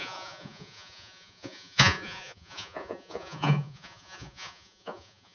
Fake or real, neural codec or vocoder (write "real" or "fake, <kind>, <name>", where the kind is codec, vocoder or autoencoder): fake, vocoder, Vocos